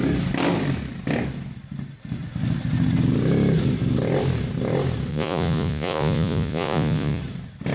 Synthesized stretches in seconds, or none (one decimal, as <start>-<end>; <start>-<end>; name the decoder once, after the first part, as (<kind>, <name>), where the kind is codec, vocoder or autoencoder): 5.1-7.2 (vocoder, Vocos)